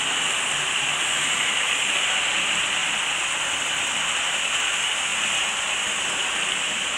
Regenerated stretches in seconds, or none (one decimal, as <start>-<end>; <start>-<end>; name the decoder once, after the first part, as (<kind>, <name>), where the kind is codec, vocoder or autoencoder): none